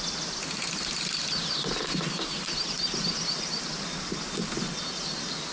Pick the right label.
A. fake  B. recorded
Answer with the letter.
B